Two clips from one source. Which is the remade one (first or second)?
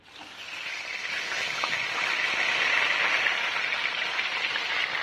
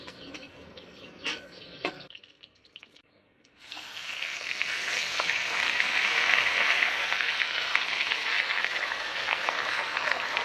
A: second